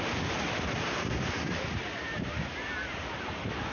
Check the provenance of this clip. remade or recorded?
recorded